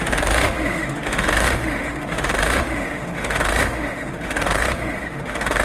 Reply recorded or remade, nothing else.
remade